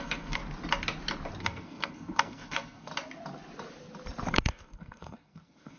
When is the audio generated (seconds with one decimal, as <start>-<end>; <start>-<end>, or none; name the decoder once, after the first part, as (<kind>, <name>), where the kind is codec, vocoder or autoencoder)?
0.0-0.4 (codec, SNAC); 1.4-2.9; 4.3-5.8